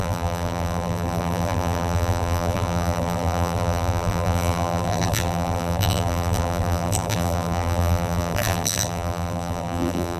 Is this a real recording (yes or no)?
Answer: no